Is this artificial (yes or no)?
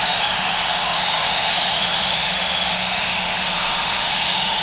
yes